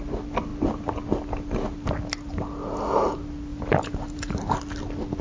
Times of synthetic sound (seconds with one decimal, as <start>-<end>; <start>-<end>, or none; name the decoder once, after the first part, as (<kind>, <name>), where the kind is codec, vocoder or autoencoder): 3.5-4.6 (vocoder, BigVGAN v2)